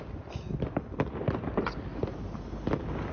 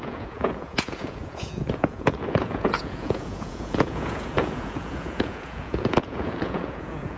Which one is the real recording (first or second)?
first